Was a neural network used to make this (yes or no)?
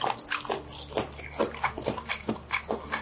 no